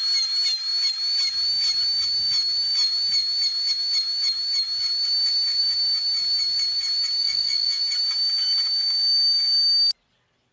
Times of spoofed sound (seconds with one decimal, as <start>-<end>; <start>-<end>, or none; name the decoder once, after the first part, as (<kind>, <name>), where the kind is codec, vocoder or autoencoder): 7.2-7.8 (vocoder, Vocos)